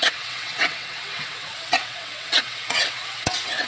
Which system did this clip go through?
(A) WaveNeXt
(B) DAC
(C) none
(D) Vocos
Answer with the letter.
A